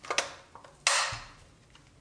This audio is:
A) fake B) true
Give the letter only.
B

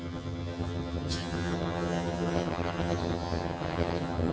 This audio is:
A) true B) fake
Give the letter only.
B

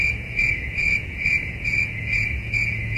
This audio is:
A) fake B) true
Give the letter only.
A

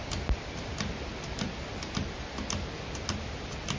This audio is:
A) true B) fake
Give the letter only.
A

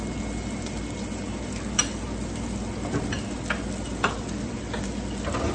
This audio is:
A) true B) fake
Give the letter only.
A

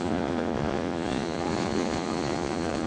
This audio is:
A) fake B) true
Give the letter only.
A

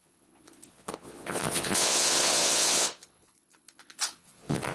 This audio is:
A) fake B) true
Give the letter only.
A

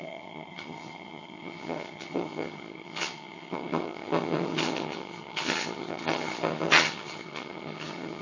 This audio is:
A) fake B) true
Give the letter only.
A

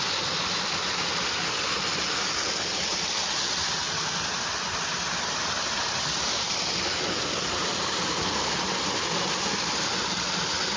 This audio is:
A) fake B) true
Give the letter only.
B